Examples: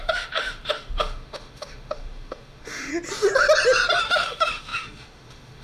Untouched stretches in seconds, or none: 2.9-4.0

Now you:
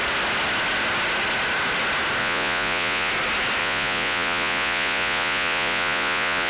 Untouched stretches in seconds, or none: 0.0-2.2; 3.1-3.6

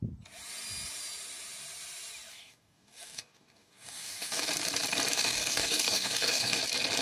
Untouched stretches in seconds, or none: 0.0-2.3; 4.5-5.1; 6.6-7.0

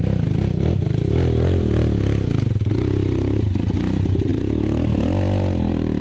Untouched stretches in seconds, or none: 0.0-6.0